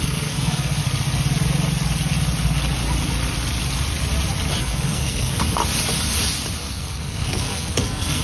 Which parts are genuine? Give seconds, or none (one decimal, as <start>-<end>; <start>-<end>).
0.8-4.6; 5.6-6.6